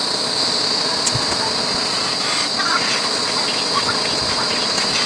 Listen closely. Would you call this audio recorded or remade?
recorded